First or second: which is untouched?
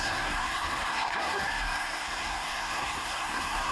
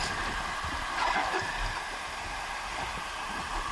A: second